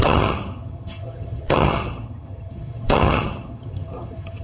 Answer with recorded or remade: remade